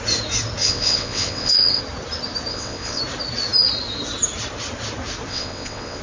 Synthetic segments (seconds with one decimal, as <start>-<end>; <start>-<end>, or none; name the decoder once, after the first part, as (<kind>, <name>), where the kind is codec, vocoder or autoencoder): 0.6-1.8 (vocoder, WaveNeXt); 2.5-3.0; 5.3-6.0